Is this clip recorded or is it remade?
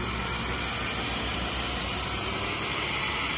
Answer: recorded